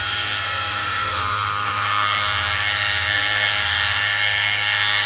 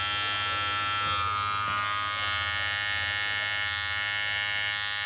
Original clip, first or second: second